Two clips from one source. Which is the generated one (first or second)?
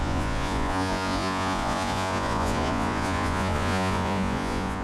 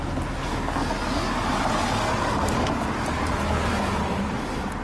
first